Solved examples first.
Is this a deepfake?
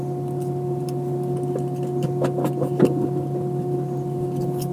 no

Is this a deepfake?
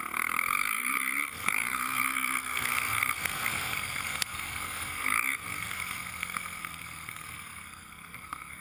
yes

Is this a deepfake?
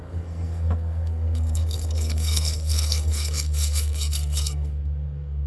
yes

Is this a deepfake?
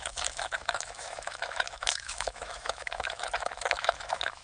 yes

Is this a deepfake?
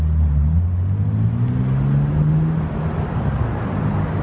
no